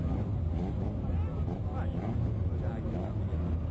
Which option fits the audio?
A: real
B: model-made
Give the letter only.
A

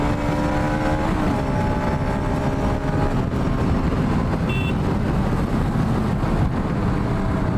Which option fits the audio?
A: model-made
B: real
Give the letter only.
B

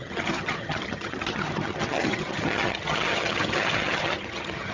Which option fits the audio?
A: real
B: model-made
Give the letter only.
B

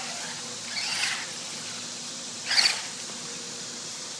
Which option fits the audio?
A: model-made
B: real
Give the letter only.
B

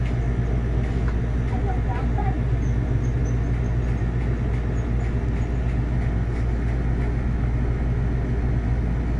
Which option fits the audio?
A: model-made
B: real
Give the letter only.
B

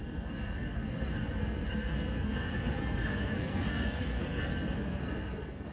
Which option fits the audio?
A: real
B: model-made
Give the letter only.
B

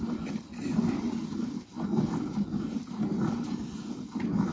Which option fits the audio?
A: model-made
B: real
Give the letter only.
B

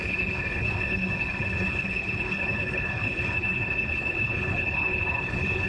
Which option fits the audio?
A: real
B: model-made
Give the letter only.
B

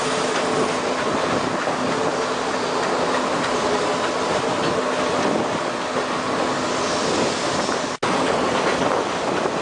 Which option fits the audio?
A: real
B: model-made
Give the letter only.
A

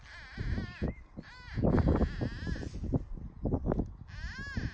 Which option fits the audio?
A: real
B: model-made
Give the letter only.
A